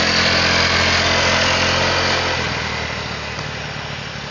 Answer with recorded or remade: recorded